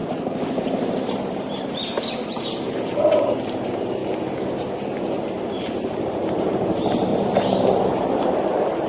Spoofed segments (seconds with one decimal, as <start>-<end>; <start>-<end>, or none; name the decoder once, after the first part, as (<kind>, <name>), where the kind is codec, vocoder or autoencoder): 0.0-7.1 (vocoder, BigVGAN v2); 7.9-8.9